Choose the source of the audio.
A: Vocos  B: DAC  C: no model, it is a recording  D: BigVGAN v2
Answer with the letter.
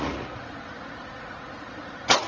A